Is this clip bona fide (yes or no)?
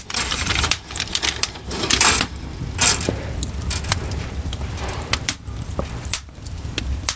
no